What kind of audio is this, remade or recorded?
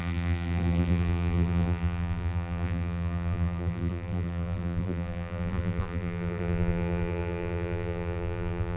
remade